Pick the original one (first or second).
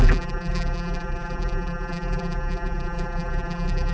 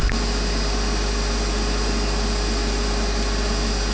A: second